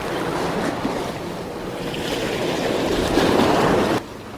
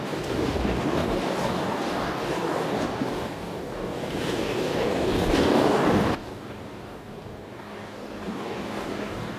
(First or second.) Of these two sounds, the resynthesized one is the second